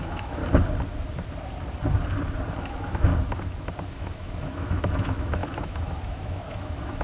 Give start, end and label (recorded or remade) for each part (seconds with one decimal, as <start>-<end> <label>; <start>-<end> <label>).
0.0-0.4 remade; 0.4-2.6 recorded; 2.6-3.1 remade; 3.1-3.9 recorded; 3.9-7.0 remade